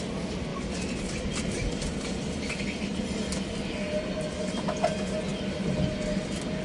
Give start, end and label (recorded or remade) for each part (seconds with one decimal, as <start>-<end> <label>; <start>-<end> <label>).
0.0-6.6 recorded